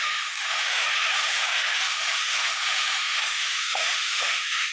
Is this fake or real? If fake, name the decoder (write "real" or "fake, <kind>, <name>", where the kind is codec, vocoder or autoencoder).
fake, autoencoder, DAC-VAE